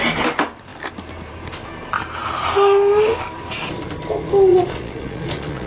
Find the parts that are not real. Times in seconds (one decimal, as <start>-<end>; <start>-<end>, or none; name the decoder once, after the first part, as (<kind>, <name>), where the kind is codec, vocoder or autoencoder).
4.5-5.7 (vocoder, Vocos)